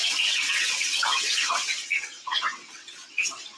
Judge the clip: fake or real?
fake